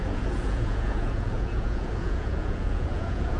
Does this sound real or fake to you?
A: fake